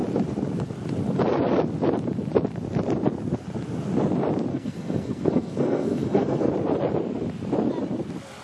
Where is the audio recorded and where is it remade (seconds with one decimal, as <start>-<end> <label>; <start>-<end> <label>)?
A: 0.0-4.5 recorded; 4.5-6.5 remade; 6.5-8.4 recorded